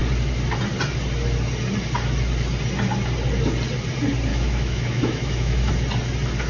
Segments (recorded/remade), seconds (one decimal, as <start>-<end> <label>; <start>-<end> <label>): 0.0-4.3 recorded; 4.3-5.7 remade; 5.7-6.5 recorded